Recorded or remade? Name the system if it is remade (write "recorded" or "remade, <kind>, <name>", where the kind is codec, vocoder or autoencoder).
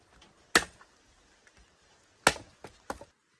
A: recorded